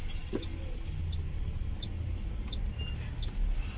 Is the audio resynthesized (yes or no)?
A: no